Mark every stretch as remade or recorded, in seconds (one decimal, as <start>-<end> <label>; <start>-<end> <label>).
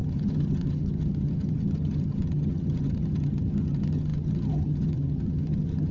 0.0-5.9 remade